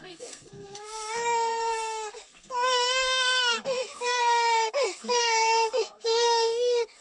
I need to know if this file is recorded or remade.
remade